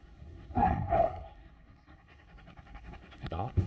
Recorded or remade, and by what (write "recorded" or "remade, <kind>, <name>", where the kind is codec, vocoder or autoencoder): remade, codec, SNAC